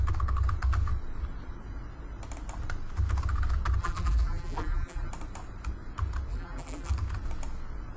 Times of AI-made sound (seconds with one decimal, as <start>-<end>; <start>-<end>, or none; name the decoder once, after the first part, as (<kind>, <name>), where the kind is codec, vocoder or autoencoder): 3.8-5.1 (vocoder, BigVGAN v2); 6.3-6.9